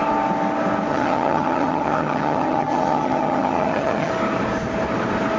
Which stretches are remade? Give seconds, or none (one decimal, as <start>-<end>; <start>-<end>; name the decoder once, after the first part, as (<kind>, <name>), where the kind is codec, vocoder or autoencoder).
0.9-4.1 (vocoder, HiFi-GAN)